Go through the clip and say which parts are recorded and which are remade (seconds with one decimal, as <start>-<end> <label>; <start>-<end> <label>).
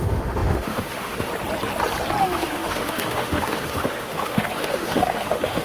0.0-1.3 remade; 1.3-2.2 recorded; 2.2-5.6 remade